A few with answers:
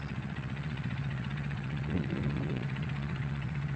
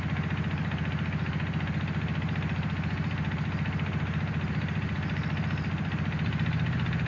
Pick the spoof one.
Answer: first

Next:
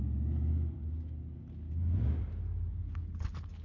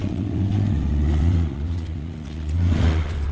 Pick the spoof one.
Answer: second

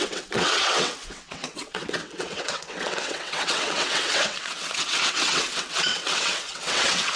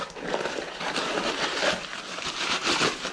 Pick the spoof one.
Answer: first